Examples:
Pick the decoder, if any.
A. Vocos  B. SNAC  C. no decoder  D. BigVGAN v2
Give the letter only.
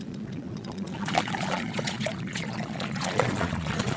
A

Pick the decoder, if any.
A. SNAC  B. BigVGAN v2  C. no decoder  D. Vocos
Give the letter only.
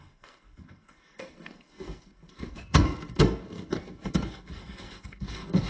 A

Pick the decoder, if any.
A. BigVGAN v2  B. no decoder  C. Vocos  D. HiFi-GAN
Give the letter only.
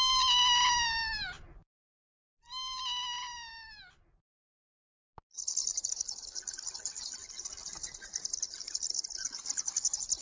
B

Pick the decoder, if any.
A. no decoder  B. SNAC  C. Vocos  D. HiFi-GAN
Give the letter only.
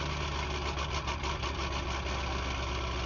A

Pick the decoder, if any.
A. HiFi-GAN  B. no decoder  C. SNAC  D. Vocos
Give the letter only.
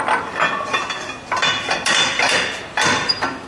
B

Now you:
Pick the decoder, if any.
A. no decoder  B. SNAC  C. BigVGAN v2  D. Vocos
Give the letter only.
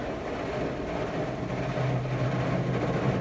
A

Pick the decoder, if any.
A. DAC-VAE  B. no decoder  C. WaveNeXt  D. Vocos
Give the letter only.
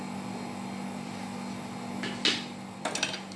B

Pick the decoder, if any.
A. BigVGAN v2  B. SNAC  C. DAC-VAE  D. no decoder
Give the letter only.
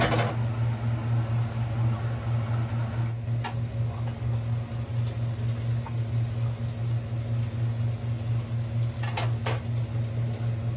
D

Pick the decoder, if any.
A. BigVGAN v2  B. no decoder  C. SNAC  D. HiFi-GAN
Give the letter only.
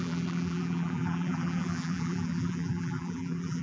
A